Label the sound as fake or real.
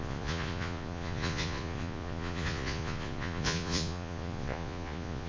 fake